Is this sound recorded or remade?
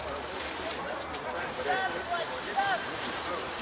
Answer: remade